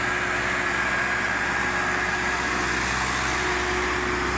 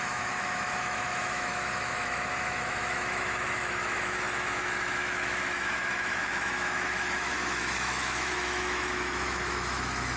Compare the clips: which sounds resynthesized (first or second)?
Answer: second